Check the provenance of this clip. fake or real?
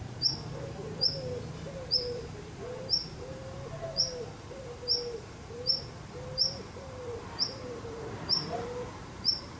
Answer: fake